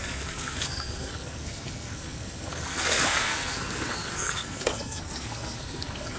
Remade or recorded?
remade